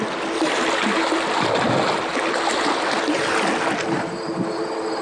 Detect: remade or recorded recorded